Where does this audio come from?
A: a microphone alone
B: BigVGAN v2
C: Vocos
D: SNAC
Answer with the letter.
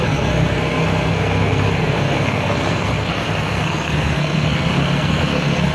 D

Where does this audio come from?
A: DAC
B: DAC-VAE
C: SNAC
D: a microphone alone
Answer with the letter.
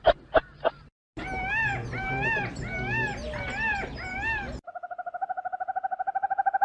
D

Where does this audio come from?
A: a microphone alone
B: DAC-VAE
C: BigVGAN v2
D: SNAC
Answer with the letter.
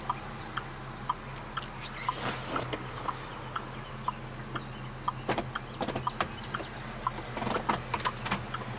A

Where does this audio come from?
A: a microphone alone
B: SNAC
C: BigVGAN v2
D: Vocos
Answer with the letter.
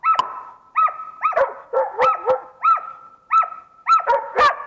A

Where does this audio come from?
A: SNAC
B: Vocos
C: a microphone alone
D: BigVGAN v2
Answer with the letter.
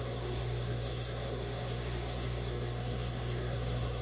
A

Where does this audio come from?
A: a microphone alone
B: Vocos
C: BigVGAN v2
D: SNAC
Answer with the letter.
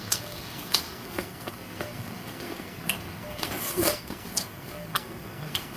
D